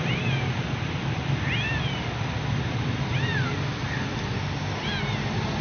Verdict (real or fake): real